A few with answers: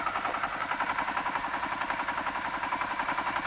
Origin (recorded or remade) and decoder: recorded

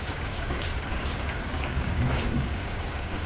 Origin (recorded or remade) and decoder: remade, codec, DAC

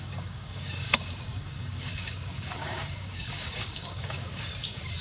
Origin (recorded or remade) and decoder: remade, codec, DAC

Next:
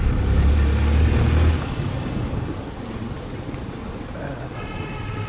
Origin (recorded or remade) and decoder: recorded